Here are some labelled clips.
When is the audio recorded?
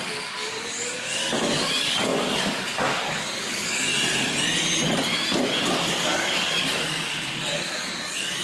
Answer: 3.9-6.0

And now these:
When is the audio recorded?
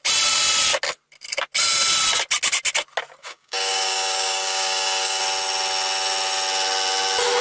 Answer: 0.0-3.2; 5.2-7.4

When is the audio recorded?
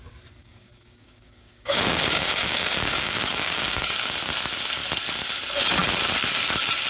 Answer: 0.0-0.4; 4.0-6.9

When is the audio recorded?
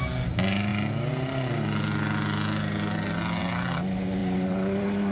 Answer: 0.0-5.1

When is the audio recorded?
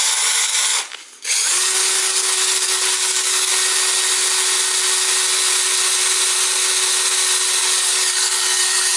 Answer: 3.5-7.6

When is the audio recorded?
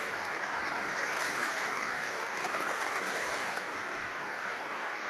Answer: none